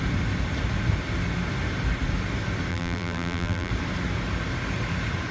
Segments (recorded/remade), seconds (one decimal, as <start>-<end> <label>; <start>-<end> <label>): 0.0-2.7 recorded; 2.7-3.7 remade; 3.7-5.3 recorded